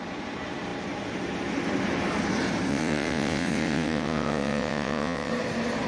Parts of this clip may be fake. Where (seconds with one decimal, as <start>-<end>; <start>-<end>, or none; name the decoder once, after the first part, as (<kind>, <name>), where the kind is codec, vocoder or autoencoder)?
2.7-5.3 (vocoder, WaveNeXt)